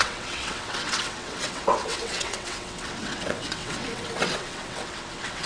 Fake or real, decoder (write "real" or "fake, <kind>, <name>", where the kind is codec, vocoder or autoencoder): fake, vocoder, WaveNeXt